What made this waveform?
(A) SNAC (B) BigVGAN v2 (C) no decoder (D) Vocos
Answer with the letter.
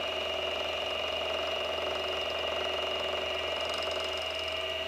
C